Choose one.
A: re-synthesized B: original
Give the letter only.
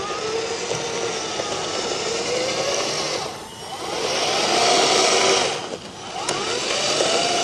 B